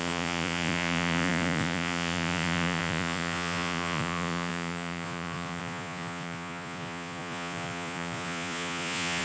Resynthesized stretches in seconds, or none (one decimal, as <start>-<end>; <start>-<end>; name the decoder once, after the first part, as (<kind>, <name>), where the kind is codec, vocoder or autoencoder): 0.0-9.2 (vocoder, Vocos)